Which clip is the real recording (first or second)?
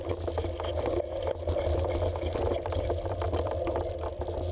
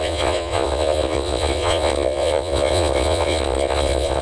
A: first